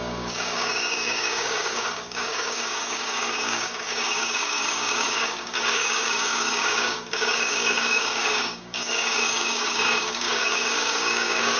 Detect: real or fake fake